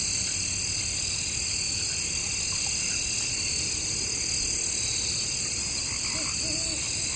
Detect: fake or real real